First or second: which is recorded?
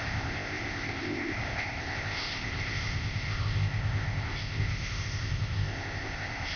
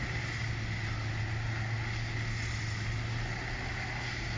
second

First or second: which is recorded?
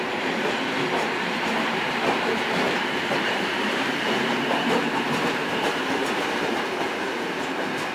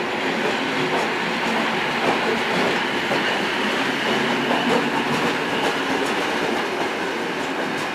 second